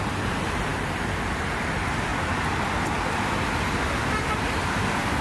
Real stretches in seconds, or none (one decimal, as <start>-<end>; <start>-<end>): 2.1-4.2